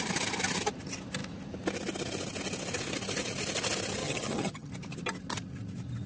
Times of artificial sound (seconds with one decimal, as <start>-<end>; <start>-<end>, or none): 4.0-4.7